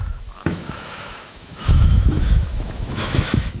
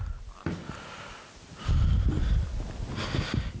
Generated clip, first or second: first